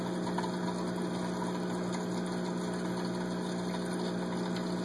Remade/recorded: recorded